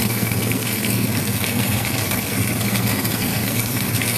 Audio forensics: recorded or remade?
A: remade